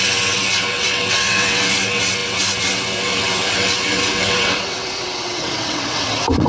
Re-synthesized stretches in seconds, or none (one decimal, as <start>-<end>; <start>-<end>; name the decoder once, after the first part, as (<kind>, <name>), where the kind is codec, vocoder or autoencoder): 0.0-6.5 (vocoder, WaveNeXt)